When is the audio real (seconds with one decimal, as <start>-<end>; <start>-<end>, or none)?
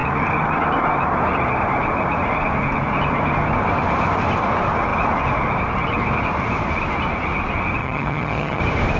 0.0-7.8; 8.6-9.0